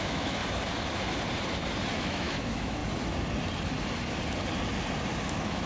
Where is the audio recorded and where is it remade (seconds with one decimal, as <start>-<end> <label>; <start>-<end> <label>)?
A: 0.0-0.4 remade; 0.4-1.9 recorded; 1.9-2.8 remade; 2.8-5.2 recorded; 5.2-5.7 remade